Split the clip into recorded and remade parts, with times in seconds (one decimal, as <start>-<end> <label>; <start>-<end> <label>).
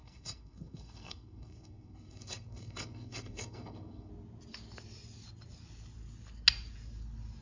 0.0-4.1 remade; 4.1-7.4 recorded